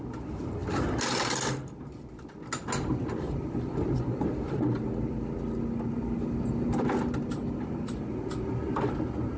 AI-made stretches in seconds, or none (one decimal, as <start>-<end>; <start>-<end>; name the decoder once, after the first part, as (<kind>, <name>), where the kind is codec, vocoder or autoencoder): none